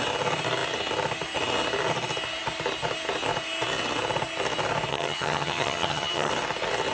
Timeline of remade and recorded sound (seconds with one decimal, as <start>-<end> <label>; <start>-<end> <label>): 0.0-4.9 recorded; 4.9-6.3 remade; 6.3-6.9 recorded

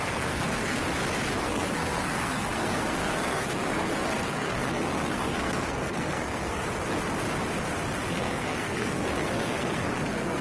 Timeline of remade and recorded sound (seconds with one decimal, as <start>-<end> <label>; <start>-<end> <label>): 0.0-0.8 remade; 0.8-1.4 recorded; 1.4-6.6 remade; 6.6-8.1 recorded; 8.1-10.4 remade

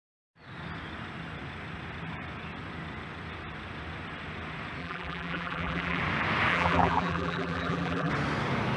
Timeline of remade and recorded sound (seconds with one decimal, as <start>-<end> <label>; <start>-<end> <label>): 0.0-4.8 recorded; 4.8-6.0 remade; 6.0-6.5 recorded; 6.5-8.1 remade; 8.1-8.8 recorded

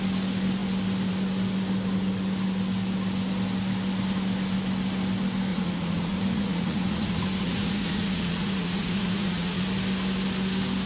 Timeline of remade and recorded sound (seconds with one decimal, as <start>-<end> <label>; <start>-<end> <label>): 0.0-5.5 recorded; 5.5-9.6 remade; 9.6-10.9 recorded

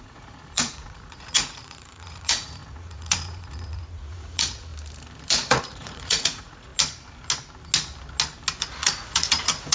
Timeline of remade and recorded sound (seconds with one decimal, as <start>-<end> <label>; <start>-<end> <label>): 0.0-4.7 remade; 4.7-5.6 recorded; 5.6-6.7 remade; 6.7-8.6 recorded; 8.6-9.7 remade

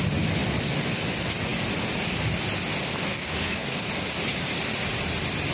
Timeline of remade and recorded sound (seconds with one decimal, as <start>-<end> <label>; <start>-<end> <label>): 0.0-3.1 recorded; 3.1-3.9 remade; 3.9-5.5 recorded

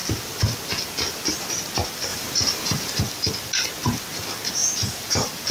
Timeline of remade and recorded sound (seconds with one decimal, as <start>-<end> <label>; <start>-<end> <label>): 0.0-2.1 recorded; 2.1-3.0 remade; 3.0-4.6 recorded; 4.6-5.5 remade